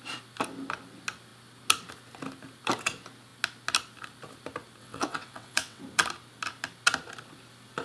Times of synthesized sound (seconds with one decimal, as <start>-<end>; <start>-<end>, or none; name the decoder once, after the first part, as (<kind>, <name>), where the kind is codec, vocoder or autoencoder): 4.8-5.8 (vocoder, WaveNeXt)

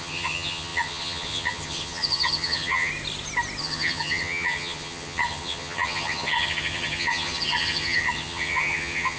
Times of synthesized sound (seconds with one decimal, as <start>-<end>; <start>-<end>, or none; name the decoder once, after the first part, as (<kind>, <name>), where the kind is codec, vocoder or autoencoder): 0.0-2.9 (vocoder, HiFi-GAN); 3.6-9.2

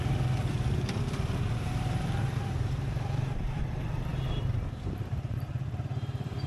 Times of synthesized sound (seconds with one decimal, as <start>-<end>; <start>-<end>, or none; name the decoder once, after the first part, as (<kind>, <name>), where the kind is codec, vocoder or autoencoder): 0.4-3.6 (vocoder, BigVGAN v2); 4.1-6.5

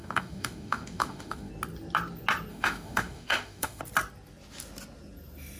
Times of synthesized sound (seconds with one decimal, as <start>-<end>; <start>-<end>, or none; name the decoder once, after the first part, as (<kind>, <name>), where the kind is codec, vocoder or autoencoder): 0.0-1.5 (autoencoder, DAC-VAE); 2.5-3.8

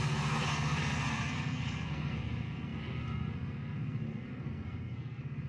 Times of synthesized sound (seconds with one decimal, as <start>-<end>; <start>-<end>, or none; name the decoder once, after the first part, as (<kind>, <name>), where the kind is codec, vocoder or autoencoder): 0.0-5.5 (codec, SNAC)

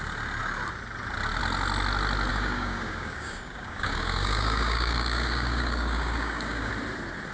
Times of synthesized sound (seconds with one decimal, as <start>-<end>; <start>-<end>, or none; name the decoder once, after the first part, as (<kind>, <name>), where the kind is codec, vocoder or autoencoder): 2.3-6.7 (codec, DAC)